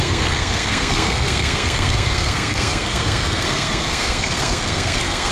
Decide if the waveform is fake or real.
fake